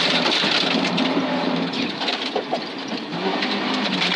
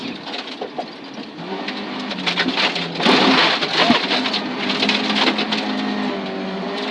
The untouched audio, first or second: second